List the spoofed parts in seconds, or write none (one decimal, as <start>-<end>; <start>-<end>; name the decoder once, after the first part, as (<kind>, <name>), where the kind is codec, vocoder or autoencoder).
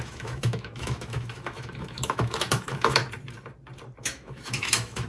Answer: 0.0-3.0 (autoencoder, DAC-VAE); 4.0-5.1